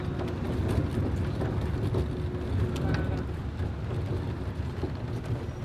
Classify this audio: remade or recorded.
recorded